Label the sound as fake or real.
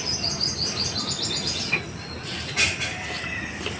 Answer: real